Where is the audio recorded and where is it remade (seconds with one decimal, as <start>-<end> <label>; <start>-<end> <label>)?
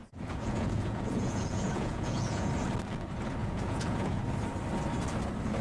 0.0-2.5 remade; 2.5-3.4 recorded; 3.4-4.2 remade; 4.2-5.6 recorded